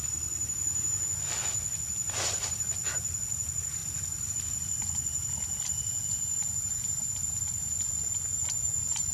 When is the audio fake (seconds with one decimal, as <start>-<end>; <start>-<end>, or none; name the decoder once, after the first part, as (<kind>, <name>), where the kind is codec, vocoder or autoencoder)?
none